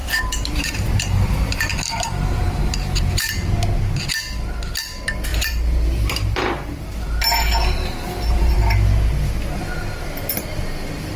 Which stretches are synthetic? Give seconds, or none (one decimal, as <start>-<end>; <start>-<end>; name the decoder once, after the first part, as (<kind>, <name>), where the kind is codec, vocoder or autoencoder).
0.0-3.3 (vocoder, BigVGAN v2); 5.3-8.6